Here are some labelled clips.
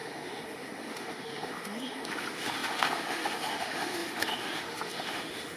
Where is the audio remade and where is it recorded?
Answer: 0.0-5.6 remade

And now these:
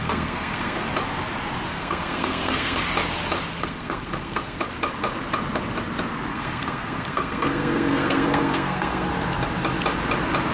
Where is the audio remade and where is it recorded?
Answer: 0.0-0.9 remade; 0.9-1.7 recorded; 1.7-2.8 remade; 2.8-3.5 recorded; 3.5-4.6 remade; 4.6-6.3 recorded; 6.3-9.1 remade; 9.1-10.5 recorded

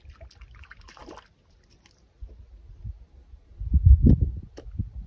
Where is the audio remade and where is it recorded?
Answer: 0.0-5.1 recorded